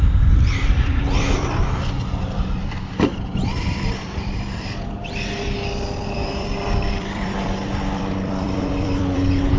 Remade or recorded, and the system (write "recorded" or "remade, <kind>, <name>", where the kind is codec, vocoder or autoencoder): remade, vocoder, BigVGAN v2